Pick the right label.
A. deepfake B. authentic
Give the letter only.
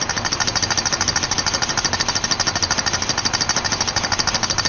B